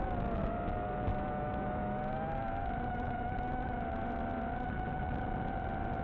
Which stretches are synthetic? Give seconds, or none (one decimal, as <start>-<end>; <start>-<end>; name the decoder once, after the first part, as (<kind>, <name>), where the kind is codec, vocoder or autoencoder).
1.1-3.2 (autoencoder, DAC-VAE)